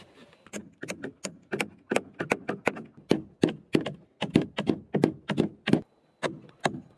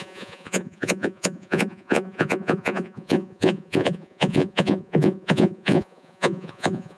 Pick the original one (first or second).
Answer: first